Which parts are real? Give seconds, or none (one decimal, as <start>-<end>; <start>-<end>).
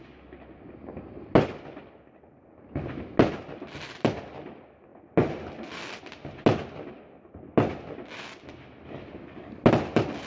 0.0-10.3